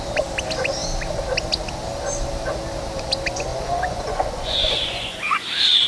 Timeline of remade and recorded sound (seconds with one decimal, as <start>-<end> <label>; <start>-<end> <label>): 0.0-3.5 recorded; 3.5-5.5 remade; 5.5-5.9 recorded